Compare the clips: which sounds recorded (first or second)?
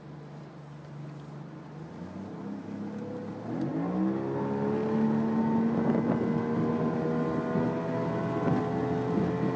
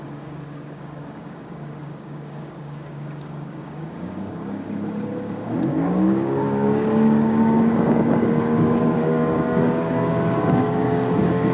first